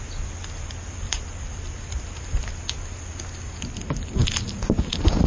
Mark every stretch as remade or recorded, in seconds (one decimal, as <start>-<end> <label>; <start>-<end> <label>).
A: 0.0-5.3 recorded